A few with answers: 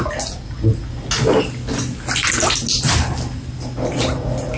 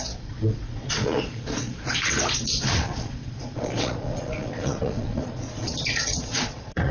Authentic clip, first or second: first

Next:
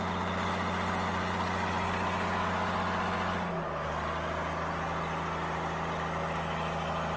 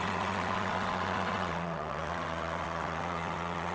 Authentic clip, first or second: first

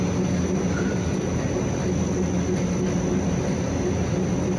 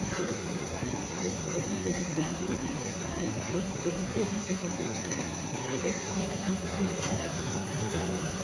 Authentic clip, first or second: first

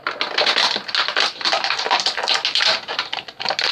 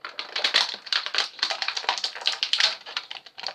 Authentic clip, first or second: first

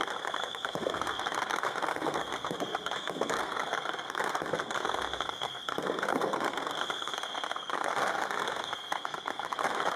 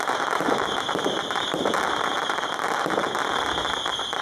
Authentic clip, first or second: second